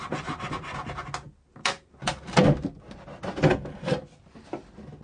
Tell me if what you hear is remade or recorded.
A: recorded